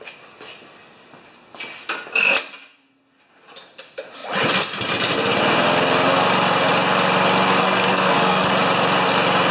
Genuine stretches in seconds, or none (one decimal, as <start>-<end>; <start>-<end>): 0.0-7.6; 8.5-9.5